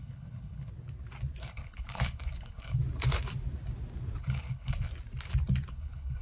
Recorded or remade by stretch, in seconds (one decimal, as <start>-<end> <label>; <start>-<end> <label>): 0.0-0.7 remade; 0.7-1.4 recorded; 1.4-2.8 remade; 2.8-4.2 recorded; 4.2-4.9 remade; 4.9-5.7 recorded; 5.7-6.2 remade